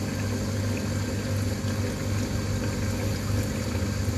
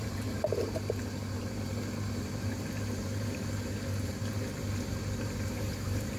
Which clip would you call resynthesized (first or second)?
second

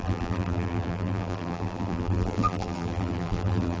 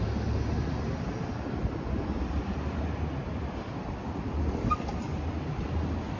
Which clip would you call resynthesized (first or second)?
first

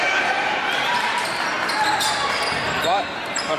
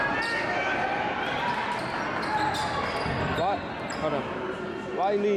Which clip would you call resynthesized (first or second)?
first